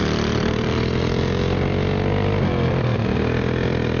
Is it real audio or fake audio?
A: real